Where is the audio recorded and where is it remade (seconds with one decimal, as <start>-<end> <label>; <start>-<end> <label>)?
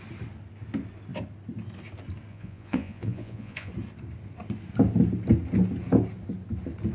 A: 0.0-2.3 recorded; 2.3-3.7 remade; 3.7-6.9 recorded